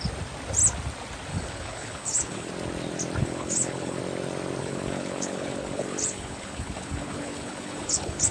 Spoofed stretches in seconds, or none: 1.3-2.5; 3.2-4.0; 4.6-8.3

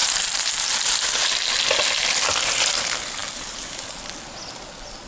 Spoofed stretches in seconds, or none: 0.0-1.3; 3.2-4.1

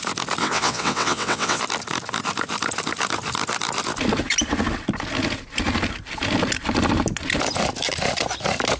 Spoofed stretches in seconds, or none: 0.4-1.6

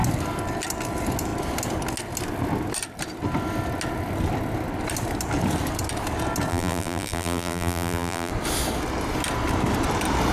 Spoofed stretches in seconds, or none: 6.5-8.3